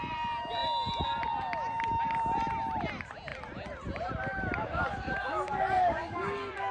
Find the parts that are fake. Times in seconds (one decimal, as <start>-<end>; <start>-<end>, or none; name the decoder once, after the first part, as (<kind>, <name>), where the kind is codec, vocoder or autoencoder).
4.6-6.7 (codec, DAC)

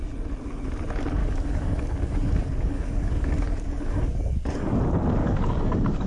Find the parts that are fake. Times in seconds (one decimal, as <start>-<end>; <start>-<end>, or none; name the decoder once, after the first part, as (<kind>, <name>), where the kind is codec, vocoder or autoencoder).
1.2-4.8 (codec, DAC); 5.2-6.1

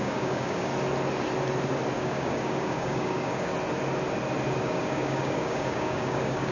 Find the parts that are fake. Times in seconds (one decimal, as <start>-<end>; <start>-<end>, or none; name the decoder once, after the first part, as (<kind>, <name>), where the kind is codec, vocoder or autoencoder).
0.0-0.7 (codec, DAC); 2.0-3.5; 4.6-6.5

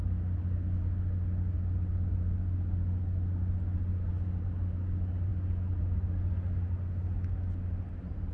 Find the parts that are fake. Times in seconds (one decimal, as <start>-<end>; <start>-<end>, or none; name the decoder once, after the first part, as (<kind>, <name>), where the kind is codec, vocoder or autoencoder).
none

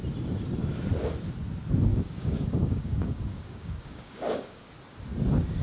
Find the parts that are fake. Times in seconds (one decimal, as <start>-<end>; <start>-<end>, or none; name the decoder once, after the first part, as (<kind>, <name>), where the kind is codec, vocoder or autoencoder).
1.9-4.7 (codec, DAC)